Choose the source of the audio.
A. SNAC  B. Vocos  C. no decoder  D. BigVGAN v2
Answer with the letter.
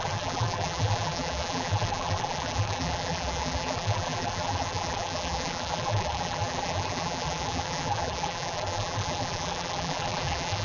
D